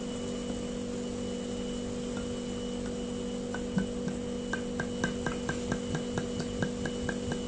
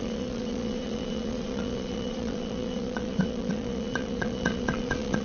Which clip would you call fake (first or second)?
second